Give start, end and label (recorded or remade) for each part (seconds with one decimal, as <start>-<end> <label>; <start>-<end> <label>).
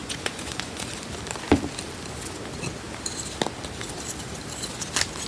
0.0-0.9 remade; 0.9-5.3 recorded